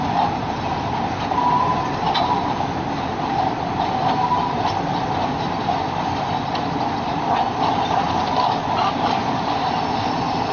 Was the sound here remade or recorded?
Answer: recorded